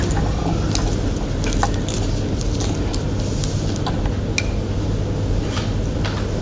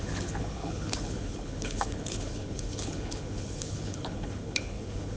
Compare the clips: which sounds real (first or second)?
first